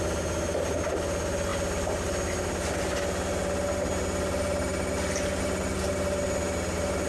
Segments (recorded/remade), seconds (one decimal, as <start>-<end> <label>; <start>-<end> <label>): 0.0-7.1 recorded

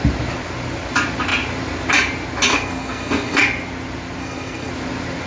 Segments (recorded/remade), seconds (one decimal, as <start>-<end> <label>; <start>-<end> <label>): 0.0-2.5 recorded; 2.5-3.4 remade; 3.4-4.2 recorded; 4.2-4.7 remade; 4.7-5.3 recorded

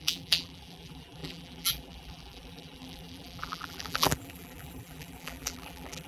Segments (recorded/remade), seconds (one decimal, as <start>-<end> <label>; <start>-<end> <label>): 0.0-6.1 remade